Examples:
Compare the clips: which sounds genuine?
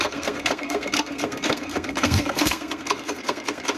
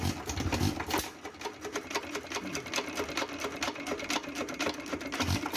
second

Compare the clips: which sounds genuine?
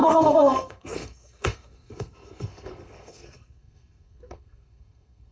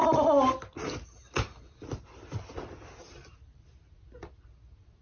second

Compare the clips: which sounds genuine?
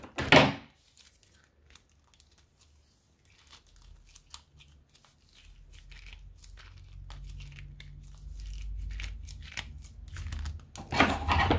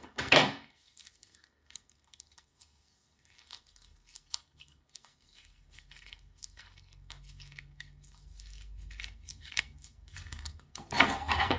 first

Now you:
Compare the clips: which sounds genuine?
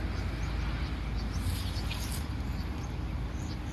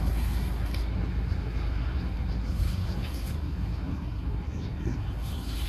first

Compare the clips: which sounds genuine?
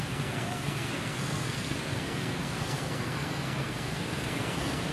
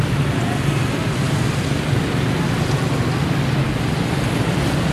second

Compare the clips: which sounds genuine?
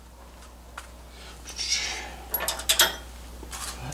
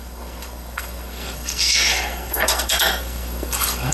first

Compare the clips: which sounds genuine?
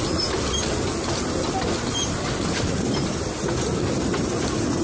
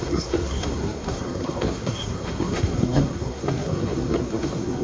first